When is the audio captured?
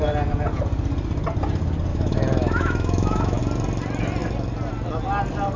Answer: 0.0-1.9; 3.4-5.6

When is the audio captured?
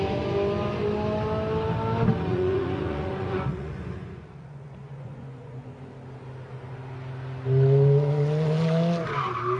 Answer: 0.0-2.3; 5.9-9.6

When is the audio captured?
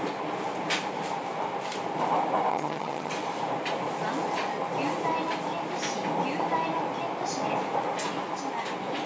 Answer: 0.0-2.5; 3.1-9.1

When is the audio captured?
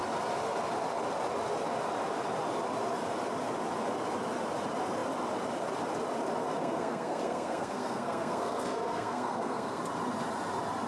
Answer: 0.0-6.6; 9.8-10.9